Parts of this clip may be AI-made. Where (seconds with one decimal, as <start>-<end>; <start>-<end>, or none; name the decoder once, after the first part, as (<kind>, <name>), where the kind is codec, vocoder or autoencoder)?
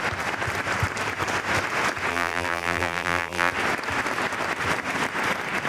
2.1-3.5 (vocoder, BigVGAN v2)